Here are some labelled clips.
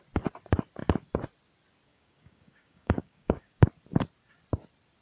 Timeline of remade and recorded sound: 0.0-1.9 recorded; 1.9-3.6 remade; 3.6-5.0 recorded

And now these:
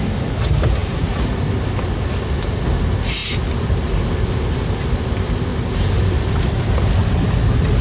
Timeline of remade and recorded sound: 0.0-7.8 recorded

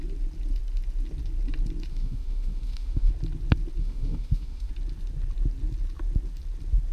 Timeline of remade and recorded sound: 0.0-1.9 recorded; 1.9-3.1 remade; 3.1-3.8 recorded; 3.8-4.7 remade; 4.7-6.9 recorded